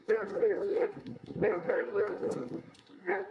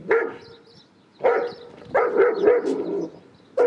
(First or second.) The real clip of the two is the second